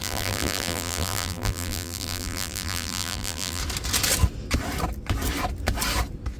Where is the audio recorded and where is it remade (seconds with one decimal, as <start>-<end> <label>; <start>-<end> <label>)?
0.0-3.6 remade; 3.6-6.4 recorded